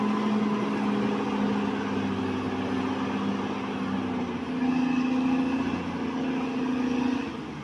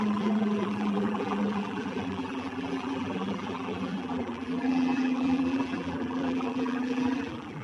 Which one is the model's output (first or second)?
second